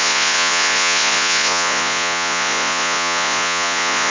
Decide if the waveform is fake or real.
fake